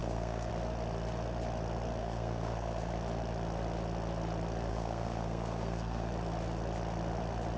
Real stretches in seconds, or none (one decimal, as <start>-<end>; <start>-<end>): 0.5-2.0; 2.9-4.7; 6.1-7.6